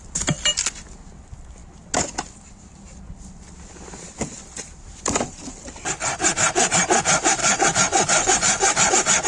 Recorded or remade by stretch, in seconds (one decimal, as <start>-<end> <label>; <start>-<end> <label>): 0.0-7.4 recorded; 7.4-8.9 remade; 8.9-9.3 recorded